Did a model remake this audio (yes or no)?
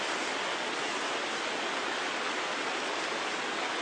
no